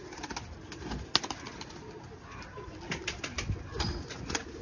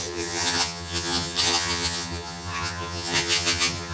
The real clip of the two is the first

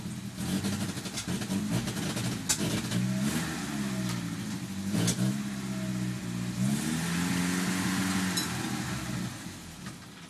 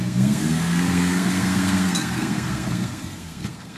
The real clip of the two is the first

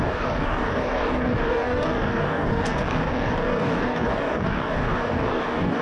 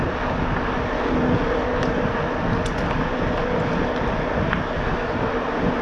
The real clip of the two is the second